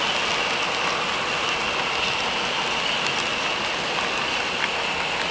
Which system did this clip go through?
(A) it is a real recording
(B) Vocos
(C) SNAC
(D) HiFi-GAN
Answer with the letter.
A